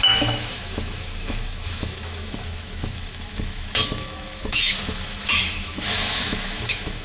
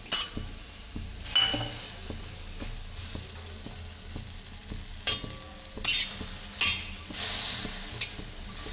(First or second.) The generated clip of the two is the first